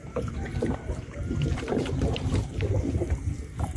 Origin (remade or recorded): remade